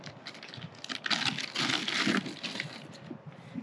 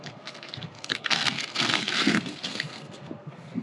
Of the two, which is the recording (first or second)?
first